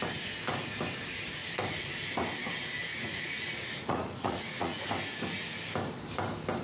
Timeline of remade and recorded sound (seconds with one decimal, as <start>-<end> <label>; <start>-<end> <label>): 0.0-2.9 recorded; 2.9-4.9 remade; 4.9-6.6 recorded